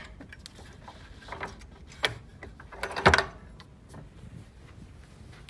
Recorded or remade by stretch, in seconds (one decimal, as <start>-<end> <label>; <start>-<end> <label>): 0.0-5.5 recorded